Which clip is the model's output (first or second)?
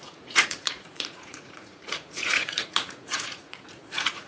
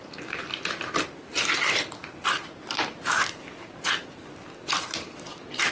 first